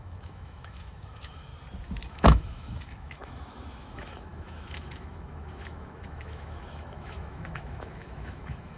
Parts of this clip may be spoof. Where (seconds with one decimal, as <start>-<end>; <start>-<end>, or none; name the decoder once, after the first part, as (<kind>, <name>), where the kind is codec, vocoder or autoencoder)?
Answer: 0.0-1.5 (autoencoder, DAC-VAE); 2.1-8.8